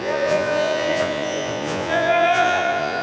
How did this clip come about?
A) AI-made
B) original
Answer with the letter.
A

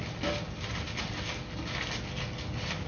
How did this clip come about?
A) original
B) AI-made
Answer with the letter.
A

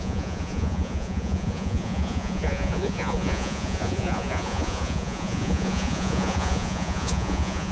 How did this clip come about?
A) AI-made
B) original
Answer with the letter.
A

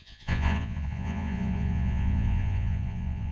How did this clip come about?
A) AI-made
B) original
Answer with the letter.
A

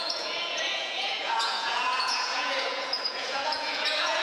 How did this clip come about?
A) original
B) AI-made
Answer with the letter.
B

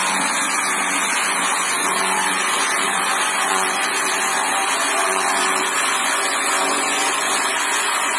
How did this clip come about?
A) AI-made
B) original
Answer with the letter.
A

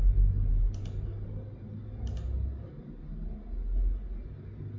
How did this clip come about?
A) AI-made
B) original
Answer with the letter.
B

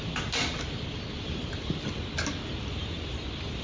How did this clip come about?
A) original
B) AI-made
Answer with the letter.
A